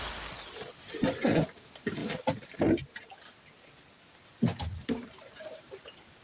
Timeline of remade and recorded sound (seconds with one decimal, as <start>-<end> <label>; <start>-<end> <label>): 0.0-6.2 recorded

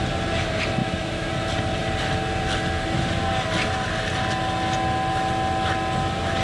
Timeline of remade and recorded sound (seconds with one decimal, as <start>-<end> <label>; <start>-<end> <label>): 0.0-0.8 recorded; 0.8-1.3 remade; 1.3-6.4 recorded

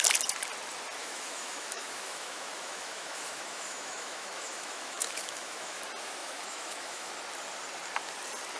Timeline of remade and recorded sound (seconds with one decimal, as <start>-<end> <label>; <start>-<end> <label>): 0.0-1.0 recorded; 1.0-5.8 remade; 5.8-6.2 recorded; 6.2-7.1 remade; 7.1-8.6 recorded